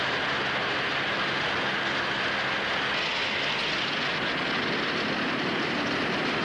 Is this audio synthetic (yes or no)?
no